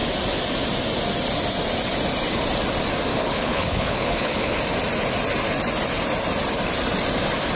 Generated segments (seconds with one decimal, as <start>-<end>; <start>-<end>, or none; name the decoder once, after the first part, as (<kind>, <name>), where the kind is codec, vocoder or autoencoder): 3.1-4.6 (codec, HILCodec)